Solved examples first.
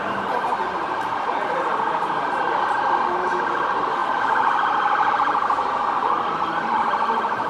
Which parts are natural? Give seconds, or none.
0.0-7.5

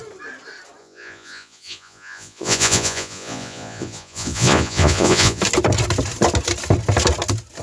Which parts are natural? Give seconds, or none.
0.0-0.8; 5.4-7.6

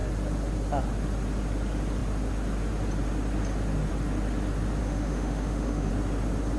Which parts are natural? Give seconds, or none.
0.0-4.8; 5.9-6.6